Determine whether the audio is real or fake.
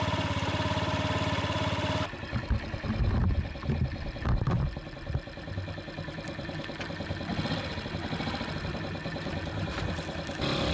real